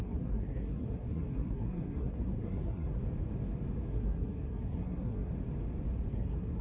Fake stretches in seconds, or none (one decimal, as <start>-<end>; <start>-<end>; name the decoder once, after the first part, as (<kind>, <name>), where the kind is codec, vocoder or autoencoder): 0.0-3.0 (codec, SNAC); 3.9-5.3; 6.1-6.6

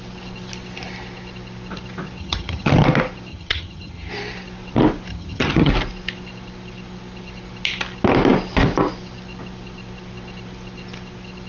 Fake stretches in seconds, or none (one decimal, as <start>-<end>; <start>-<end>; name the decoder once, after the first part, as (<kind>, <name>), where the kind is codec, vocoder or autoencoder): 2.2-2.7 (vocoder, HiFi-GAN); 3.3-4.1; 5.1-5.7

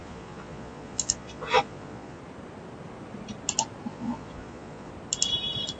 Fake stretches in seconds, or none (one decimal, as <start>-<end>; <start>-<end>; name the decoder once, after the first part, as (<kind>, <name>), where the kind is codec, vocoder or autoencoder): 0.0-2.2 (vocoder, Vocos); 3.9-4.9

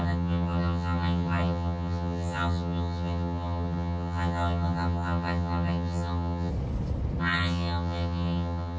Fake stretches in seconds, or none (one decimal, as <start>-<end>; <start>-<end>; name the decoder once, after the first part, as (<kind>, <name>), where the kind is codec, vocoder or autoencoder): 0.0-6.5 (vocoder, HiFi-GAN); 7.2-8.8